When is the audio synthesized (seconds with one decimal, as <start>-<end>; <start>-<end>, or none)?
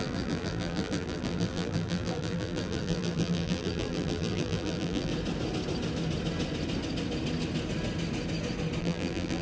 0.0-5.1; 8.8-9.4